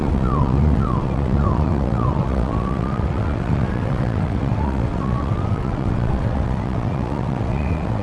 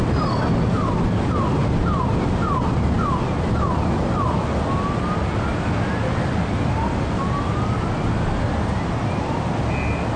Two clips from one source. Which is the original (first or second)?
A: second